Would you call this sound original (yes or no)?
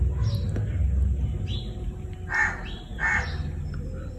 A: yes